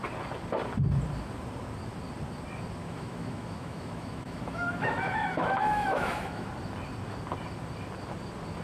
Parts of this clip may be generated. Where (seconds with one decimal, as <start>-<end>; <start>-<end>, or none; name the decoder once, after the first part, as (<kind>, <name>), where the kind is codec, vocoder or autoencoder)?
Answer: 2.8-6.5 (autoencoder, DAC-VAE)